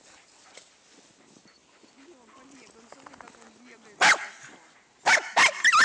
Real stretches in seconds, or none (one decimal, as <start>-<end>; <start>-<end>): 0.0-5.8